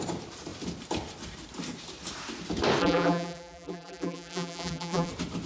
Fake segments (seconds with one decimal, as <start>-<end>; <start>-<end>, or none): 2.8-5.1